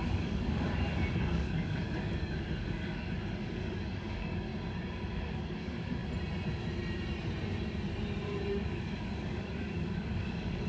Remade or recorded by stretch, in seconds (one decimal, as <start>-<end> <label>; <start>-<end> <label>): 0.0-4.5 remade; 4.5-5.1 recorded; 5.1-6.0 remade; 6.0-8.4 recorded; 8.4-10.7 remade